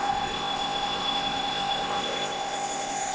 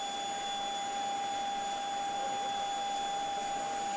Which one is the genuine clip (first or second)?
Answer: second